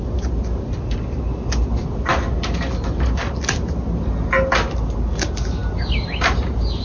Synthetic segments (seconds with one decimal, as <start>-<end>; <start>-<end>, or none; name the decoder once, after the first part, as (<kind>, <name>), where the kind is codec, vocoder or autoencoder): none